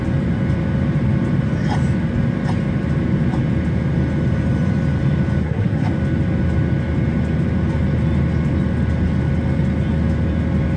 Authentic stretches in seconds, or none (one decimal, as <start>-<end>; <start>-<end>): 0.0-5.4; 5.9-10.8